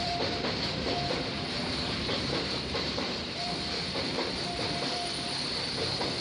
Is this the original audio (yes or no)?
no